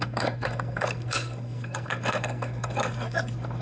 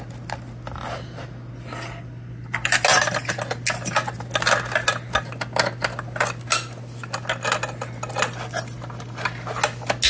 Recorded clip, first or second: second